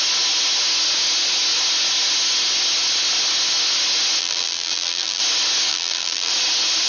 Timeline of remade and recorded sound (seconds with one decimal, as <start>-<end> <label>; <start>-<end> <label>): 0.0-4.2 recorded; 4.2-5.2 remade; 5.2-5.7 recorded; 5.7-6.3 remade; 6.3-6.9 recorded